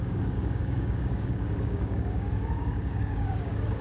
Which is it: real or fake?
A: fake